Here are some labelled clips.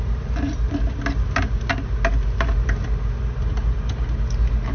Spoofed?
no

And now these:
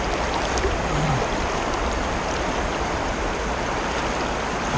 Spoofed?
yes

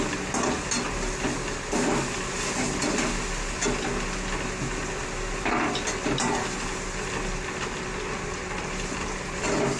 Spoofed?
no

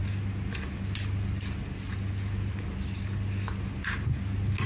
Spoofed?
no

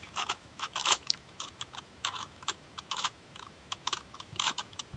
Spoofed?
yes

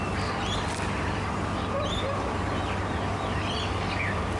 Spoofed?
no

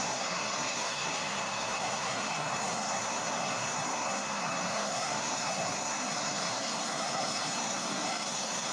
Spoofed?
yes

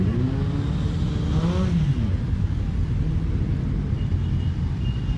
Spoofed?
no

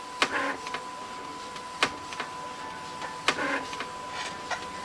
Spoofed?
no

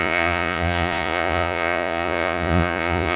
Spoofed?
yes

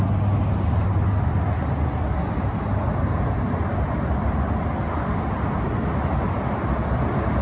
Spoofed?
no